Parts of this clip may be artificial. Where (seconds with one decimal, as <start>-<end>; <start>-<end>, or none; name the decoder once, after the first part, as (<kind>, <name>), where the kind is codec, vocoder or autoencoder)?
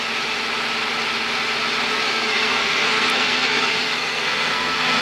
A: 1.9-5.0 (codec, SNAC)